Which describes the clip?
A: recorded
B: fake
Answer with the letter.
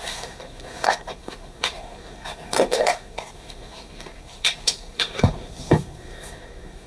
B